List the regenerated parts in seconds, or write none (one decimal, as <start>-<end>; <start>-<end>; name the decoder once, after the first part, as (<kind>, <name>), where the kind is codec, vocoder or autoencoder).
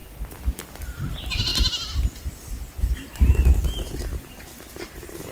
none